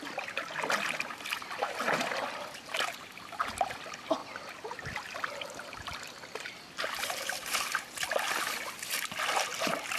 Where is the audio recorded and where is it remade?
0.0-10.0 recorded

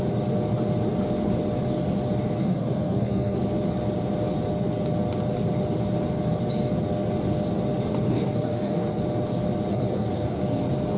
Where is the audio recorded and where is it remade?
0.0-2.4 recorded; 2.4-3.4 remade; 3.4-8.1 recorded; 8.1-9.0 remade; 9.0-9.7 recorded; 9.7-10.4 remade; 10.4-11.0 recorded